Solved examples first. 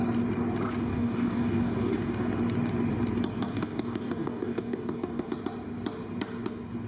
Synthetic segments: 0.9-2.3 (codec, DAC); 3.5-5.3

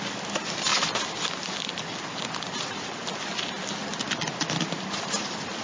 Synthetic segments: none

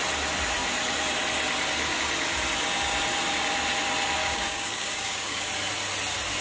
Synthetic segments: 4.2-5.5 (codec, DAC)